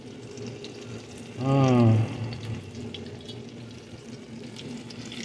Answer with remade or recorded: recorded